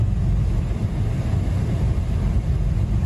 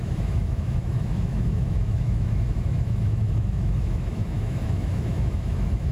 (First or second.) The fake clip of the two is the second